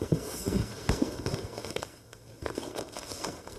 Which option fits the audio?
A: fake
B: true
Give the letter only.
A